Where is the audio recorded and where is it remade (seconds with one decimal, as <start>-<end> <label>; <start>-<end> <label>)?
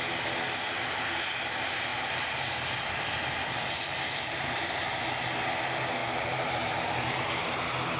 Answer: 0.0-1.9 recorded; 1.9-5.0 remade; 5.0-6.0 recorded; 6.0-7.6 remade; 7.6-8.0 recorded